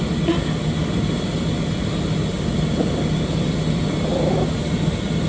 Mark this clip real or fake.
real